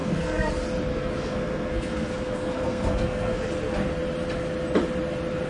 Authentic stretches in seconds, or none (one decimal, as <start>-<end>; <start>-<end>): 0.5-0.9; 3.4-5.5